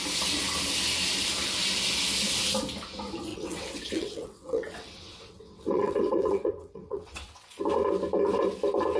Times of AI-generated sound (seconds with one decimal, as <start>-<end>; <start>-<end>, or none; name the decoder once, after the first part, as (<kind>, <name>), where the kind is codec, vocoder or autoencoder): 3.3-7.6 (vocoder, WaveNeXt)